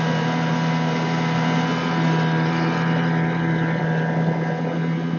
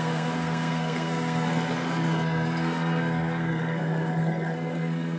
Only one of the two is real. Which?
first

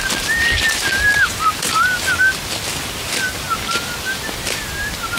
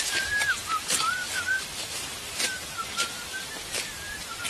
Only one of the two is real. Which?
first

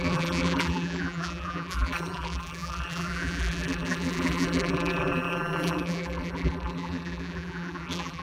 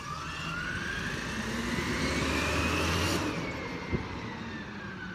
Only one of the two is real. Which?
second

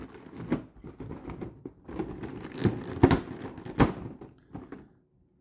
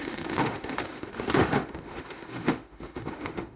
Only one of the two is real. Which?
first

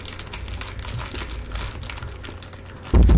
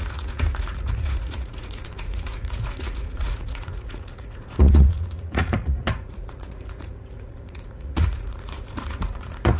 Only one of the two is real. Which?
first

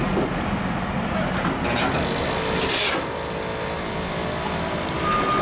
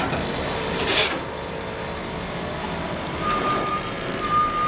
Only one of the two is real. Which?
first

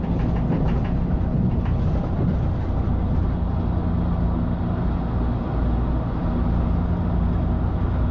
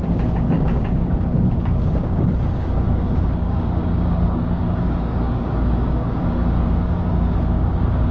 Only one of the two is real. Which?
first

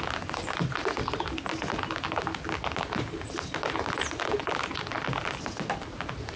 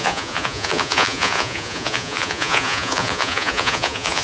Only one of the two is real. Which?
first